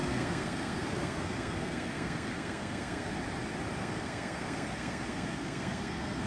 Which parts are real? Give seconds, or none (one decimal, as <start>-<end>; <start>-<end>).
3.1-3.8